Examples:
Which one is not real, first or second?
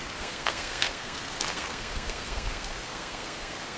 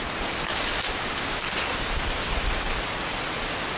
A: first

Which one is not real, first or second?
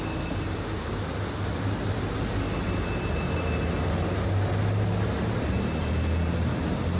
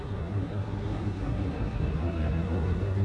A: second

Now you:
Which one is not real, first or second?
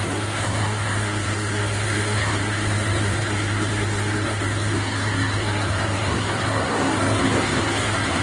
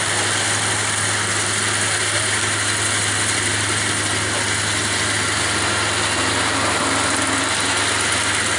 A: first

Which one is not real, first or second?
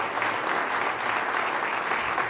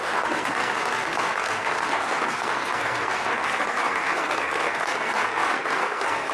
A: second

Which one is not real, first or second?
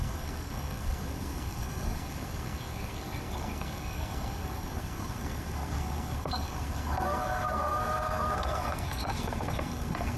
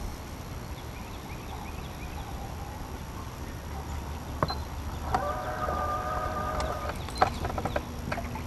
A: first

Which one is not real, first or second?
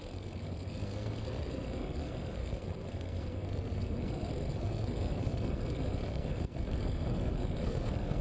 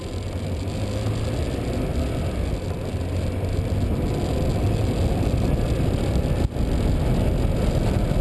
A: first